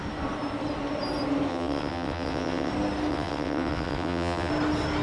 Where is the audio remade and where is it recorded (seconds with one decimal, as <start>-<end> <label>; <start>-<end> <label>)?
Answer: 0.0-1.5 recorded; 1.5-2.7 remade; 2.7-3.1 recorded; 3.1-4.5 remade; 4.5-5.0 recorded